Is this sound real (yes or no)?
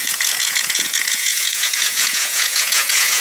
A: no